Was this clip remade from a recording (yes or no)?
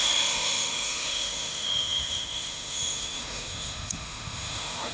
yes